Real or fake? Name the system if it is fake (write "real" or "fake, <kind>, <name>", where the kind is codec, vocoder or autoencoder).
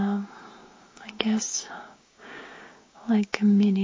fake, codec, DAC